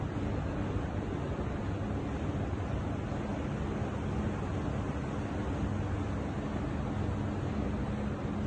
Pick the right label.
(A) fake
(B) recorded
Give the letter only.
B